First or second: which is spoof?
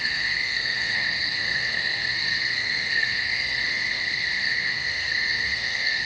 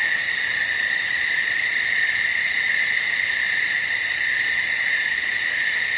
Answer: first